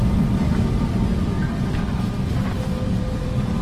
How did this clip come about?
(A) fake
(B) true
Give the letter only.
A